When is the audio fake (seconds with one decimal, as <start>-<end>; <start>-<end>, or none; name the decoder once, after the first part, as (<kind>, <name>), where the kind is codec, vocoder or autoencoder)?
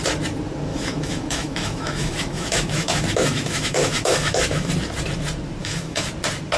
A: 0.7-4.7 (autoencoder, DAC-VAE); 5.6-6.1